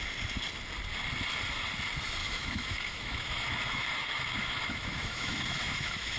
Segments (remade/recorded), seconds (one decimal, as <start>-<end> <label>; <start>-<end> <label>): 0.0-2.2 recorded; 2.2-6.2 remade